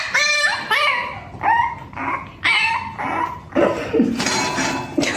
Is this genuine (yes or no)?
yes